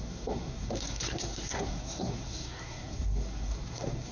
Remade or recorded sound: remade